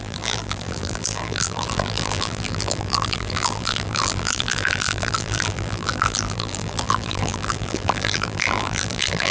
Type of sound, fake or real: fake